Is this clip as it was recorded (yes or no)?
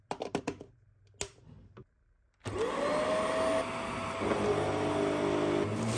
yes